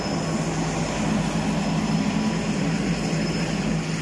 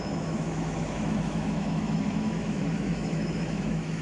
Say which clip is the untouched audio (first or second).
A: first